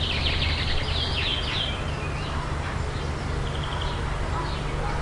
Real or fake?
real